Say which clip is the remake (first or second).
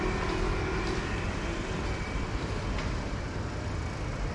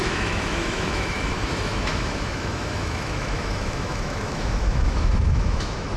second